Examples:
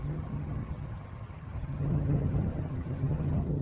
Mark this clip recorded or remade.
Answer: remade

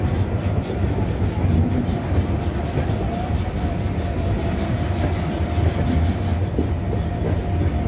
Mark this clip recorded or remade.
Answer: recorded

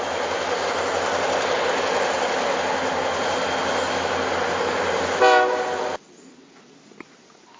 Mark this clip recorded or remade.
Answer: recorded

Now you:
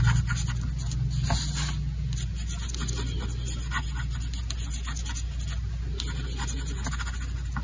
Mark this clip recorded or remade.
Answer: recorded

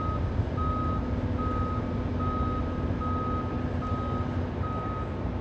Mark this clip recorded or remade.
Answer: recorded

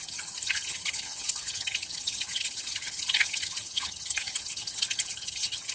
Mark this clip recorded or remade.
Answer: remade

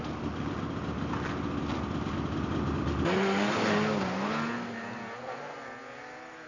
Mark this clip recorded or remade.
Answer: recorded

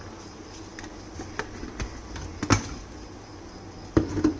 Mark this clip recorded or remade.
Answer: recorded